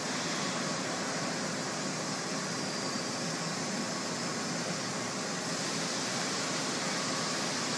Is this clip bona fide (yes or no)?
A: yes